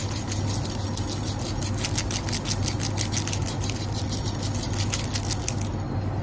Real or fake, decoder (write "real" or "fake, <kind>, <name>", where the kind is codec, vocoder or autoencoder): real